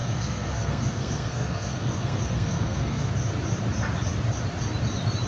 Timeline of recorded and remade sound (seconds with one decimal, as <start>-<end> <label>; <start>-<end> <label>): 0.0-3.1 remade; 3.1-5.3 recorded